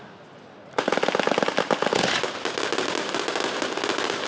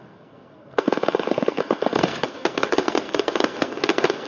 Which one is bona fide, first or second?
first